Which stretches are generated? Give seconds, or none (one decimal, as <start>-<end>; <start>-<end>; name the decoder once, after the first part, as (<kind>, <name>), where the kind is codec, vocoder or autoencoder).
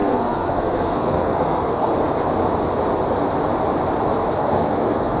0.0-1.9 (codec, SNAC); 4.4-5.2